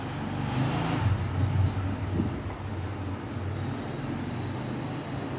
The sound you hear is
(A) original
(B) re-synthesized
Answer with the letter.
A